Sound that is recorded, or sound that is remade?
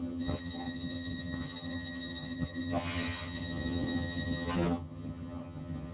remade